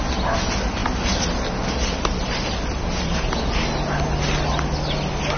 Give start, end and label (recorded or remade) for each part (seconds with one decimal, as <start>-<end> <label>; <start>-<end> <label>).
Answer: 0.0-5.4 recorded